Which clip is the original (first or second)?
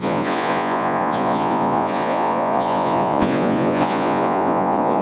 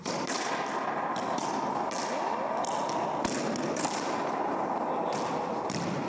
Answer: second